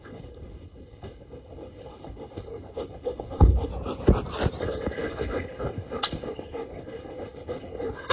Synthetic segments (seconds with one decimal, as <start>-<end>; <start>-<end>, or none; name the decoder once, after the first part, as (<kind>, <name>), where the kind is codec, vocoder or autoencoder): 0.0-3.7 (codec, HILCodec); 4.6-8.1